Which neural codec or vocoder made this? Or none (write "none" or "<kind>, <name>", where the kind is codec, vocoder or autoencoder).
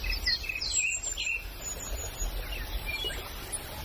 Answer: none